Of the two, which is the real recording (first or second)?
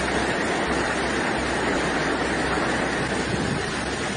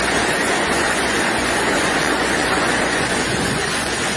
first